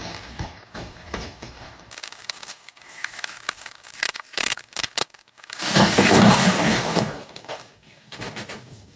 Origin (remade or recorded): remade